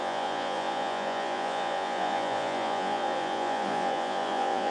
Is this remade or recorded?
remade